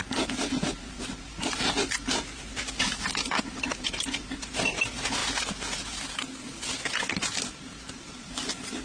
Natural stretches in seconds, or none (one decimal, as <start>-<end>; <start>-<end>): 0.0-8.8